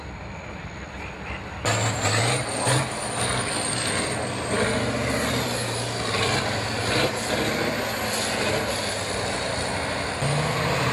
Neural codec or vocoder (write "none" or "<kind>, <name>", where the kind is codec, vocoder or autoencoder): none